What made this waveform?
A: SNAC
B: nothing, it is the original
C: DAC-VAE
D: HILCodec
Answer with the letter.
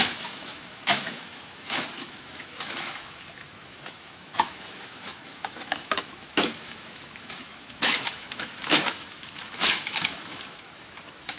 C